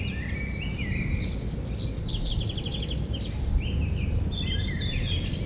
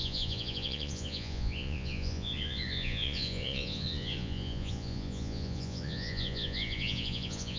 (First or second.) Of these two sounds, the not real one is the second